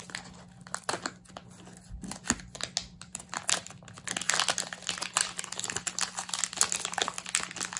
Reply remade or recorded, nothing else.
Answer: recorded